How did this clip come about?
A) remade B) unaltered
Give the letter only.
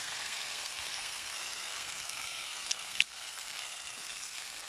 A